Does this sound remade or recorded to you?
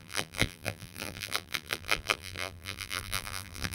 remade